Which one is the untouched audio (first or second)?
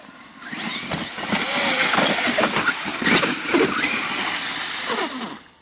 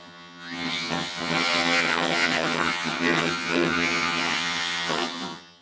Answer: first